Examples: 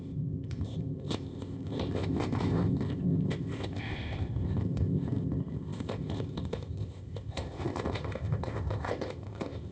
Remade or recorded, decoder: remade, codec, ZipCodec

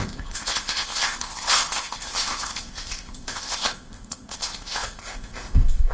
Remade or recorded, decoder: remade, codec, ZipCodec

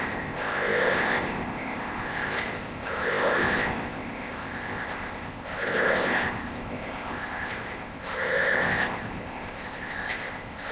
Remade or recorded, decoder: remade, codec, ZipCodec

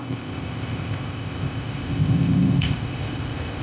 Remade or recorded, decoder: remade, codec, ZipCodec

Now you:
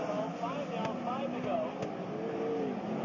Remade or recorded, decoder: recorded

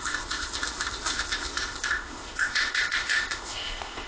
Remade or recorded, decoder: remade, codec, ZipCodec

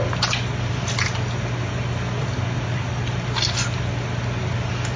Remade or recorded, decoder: recorded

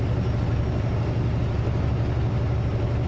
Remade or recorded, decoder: recorded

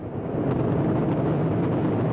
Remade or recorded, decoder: recorded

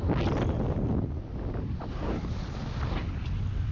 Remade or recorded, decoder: recorded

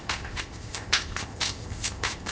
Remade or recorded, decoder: remade, codec, ZipCodec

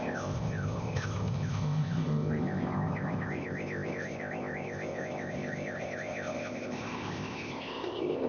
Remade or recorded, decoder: remade, codec, ZipCodec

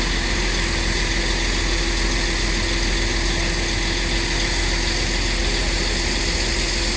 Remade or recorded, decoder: recorded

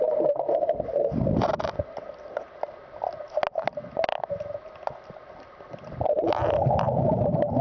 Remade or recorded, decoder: recorded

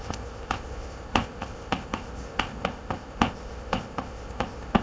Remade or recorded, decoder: remade, codec, ZipCodec